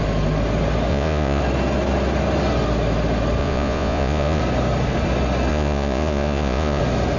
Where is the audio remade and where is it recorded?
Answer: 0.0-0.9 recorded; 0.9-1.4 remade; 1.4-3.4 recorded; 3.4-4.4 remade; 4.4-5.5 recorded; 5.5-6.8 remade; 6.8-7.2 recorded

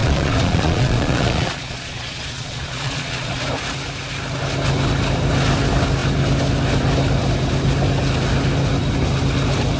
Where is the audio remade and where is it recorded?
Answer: 0.0-3.4 remade; 3.4-9.8 recorded

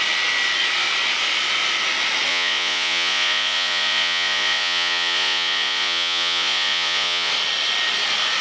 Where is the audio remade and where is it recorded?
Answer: 0.0-2.3 recorded; 2.3-7.3 remade; 7.3-8.4 recorded

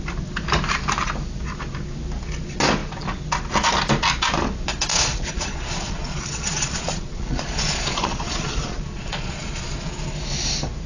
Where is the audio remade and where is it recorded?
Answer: 0.0-4.9 recorded; 4.9-9.9 remade; 9.9-10.9 recorded

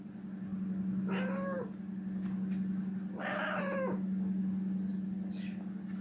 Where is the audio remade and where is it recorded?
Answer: 0.0-6.0 recorded